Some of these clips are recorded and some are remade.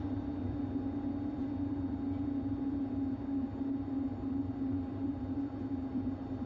remade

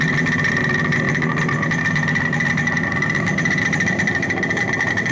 remade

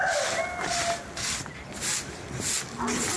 recorded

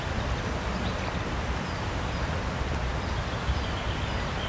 recorded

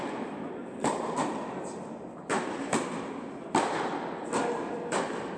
remade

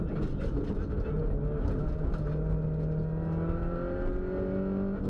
recorded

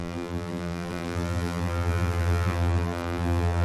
remade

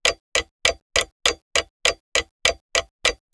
recorded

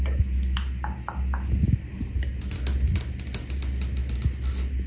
recorded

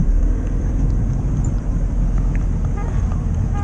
remade